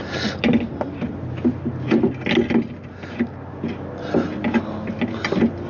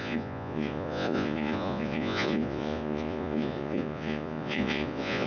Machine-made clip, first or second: second